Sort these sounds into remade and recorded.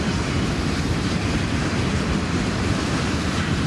remade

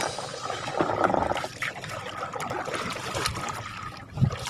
recorded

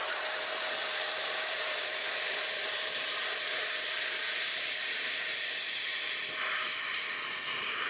remade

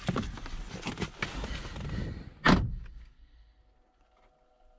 recorded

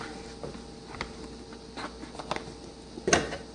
recorded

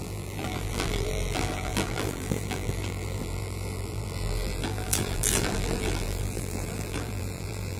remade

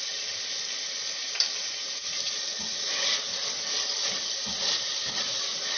recorded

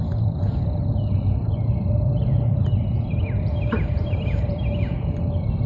remade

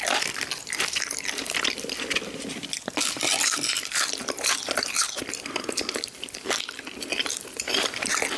remade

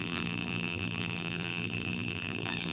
remade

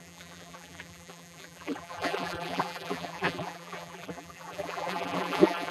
remade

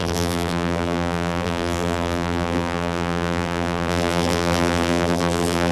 remade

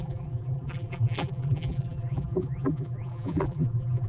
remade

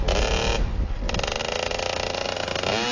recorded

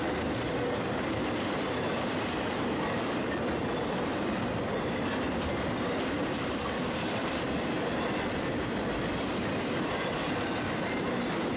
recorded